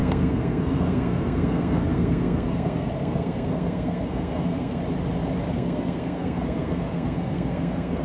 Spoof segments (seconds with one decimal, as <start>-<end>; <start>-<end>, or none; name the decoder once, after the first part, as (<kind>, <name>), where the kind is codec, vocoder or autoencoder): 0.0-4.8 (codec, SNAC); 5.5-8.0